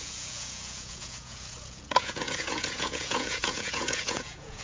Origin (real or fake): fake